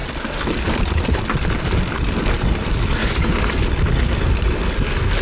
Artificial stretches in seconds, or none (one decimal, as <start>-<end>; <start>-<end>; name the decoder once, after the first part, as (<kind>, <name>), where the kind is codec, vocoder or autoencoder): 3.0-3.6 (vocoder, BigVGAN v2)